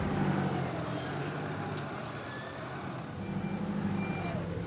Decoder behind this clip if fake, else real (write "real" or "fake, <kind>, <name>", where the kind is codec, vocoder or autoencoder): real